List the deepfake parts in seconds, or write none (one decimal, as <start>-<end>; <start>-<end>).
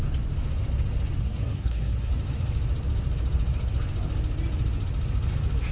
1.2-2.1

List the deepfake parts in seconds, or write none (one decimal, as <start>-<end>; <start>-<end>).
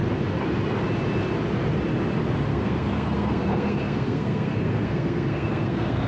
2.5-6.1